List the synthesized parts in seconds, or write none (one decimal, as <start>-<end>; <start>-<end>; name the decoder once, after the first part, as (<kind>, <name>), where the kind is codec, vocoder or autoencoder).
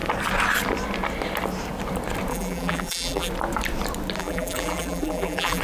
2.3-3.3 (vocoder, BigVGAN v2); 4.2-5.6